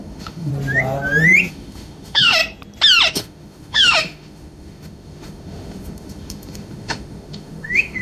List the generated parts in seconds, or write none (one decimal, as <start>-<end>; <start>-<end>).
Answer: 0.0-0.5; 1.5-2.4; 3.1-8.0